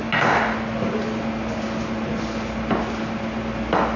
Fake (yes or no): no